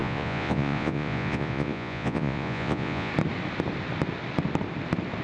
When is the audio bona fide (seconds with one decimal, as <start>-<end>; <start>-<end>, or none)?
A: 3.1-5.2

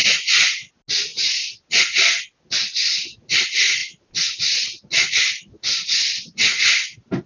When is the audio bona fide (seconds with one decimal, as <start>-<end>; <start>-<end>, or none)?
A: 0.0-7.3

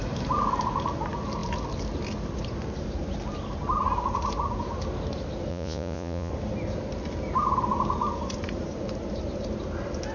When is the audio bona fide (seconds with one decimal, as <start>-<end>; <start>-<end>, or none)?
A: 0.0-5.5; 6.3-10.1